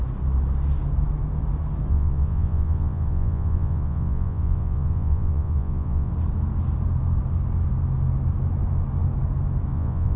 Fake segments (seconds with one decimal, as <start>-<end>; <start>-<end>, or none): 1.9-6.1; 9.7-10.2